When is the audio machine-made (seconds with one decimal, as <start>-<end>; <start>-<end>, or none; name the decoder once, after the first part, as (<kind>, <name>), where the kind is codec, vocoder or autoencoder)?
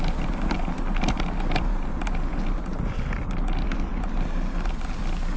none